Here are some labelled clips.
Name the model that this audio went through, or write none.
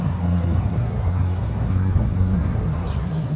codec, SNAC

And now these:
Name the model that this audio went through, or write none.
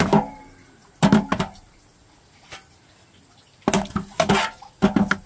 none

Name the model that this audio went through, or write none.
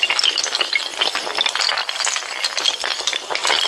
none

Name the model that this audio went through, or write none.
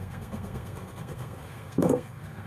codec, SNAC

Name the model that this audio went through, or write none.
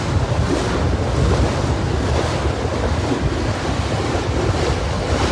none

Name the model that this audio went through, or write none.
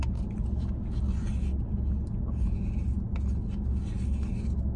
none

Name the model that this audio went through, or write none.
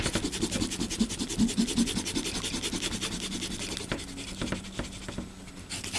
none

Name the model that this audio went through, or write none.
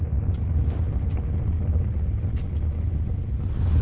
none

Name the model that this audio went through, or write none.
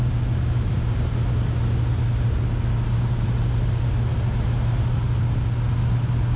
none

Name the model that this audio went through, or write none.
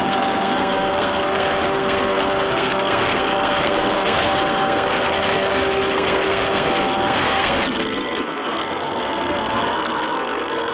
codec, SNAC